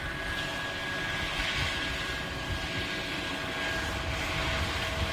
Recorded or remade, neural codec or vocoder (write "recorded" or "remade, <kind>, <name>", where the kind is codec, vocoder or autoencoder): recorded